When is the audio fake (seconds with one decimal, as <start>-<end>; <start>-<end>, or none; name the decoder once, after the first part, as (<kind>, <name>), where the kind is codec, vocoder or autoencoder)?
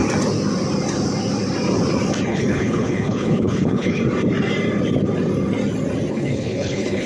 2.3-4.0 (codec, HILCodec); 6.1-7.1